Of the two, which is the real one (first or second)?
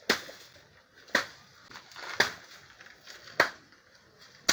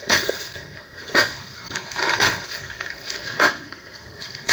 first